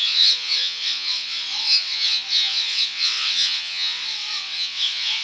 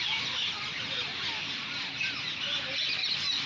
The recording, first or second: second